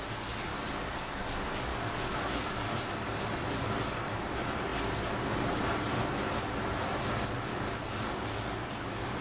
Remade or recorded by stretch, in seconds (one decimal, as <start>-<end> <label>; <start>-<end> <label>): 0.0-0.5 recorded; 0.5-1.2 remade; 1.2-1.7 recorded; 1.7-2.8 remade; 2.8-7.5 recorded; 7.5-9.2 remade